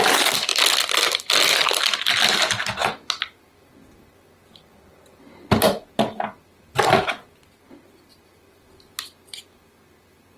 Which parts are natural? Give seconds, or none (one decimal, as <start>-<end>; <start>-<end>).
0.0-10.4